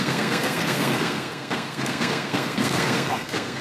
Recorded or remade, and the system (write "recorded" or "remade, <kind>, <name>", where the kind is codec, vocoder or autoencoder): remade, codec, SNAC